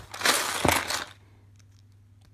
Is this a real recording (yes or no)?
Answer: yes